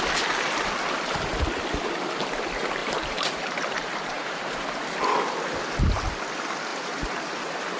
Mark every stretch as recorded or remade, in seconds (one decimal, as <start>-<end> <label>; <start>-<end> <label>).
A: 0.0-2.8 recorded; 2.8-4.6 remade; 4.6-6.7 recorded; 6.7-7.8 remade